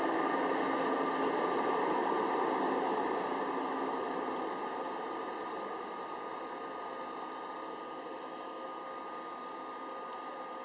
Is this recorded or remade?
recorded